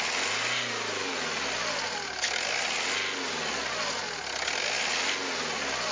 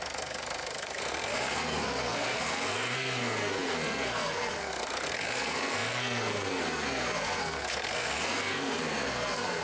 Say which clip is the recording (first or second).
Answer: first